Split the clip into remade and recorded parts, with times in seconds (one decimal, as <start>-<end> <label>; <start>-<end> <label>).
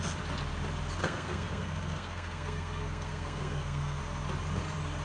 0.0-1.0 recorded; 1.0-4.0 remade; 4.0-5.0 recorded